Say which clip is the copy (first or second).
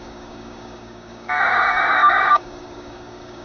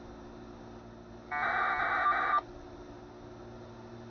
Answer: first